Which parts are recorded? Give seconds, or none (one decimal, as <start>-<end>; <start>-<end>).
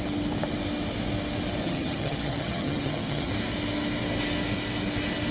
0.0-1.6; 3.3-5.3